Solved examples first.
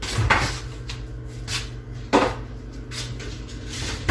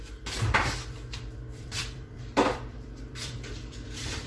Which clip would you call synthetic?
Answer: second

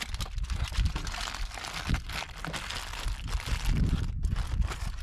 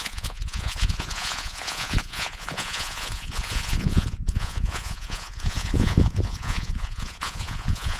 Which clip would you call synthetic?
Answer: second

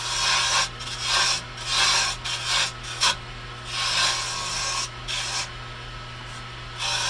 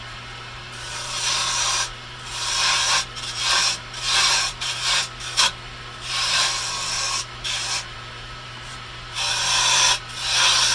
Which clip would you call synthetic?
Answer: second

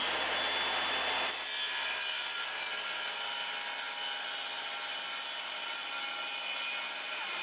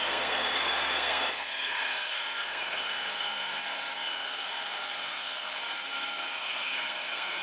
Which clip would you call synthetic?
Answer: second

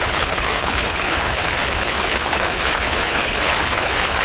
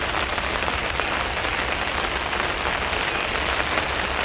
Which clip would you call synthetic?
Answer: first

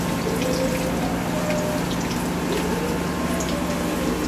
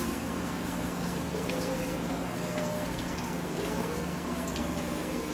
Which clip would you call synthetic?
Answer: second